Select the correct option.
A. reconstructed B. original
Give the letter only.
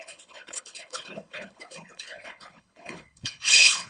A